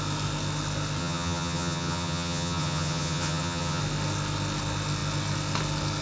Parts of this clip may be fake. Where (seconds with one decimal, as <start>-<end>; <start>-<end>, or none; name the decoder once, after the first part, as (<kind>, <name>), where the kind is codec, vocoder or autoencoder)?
1.0-3.8 (vocoder, HiFi-GAN)